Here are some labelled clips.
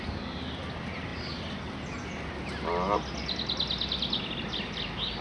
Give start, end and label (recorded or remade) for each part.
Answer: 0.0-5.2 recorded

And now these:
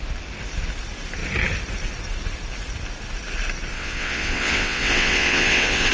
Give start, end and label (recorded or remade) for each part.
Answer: 0.0-3.7 recorded; 3.7-5.9 remade

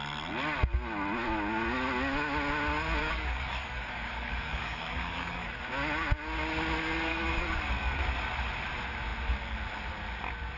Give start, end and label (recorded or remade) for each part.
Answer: 0.0-3.0 recorded; 3.0-5.6 remade; 5.6-7.1 recorded; 7.1-7.7 remade; 7.7-10.6 recorded

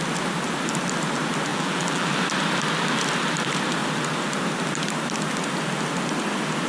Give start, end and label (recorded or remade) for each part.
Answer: 0.0-1.5 recorded; 1.5-2.1 remade; 2.1-6.7 recorded

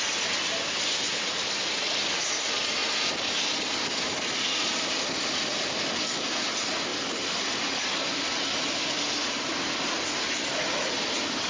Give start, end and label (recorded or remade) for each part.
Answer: 0.0-11.5 recorded

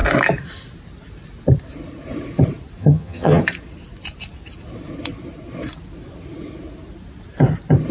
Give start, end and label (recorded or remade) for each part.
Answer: 0.0-2.8 recorded; 2.8-3.4 remade; 3.4-7.9 recorded